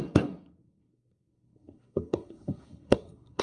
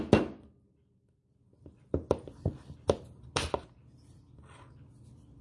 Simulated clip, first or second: first